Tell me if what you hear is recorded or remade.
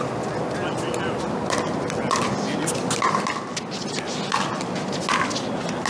recorded